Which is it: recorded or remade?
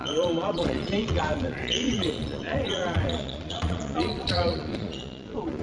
remade